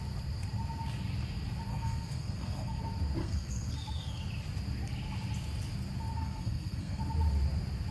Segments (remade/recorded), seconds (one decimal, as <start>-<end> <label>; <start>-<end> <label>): 0.0-1.7 recorded; 1.7-2.8 remade; 2.8-3.2 recorded; 3.2-4.2 remade; 4.2-6.2 recorded; 6.2-7.0 remade; 7.0-7.9 recorded